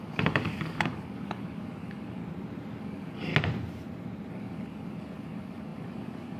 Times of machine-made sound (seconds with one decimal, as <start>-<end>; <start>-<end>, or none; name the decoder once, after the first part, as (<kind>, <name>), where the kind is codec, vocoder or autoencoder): 0.0-2.2 (codec, DAC); 2.8-3.3; 4.3-6.4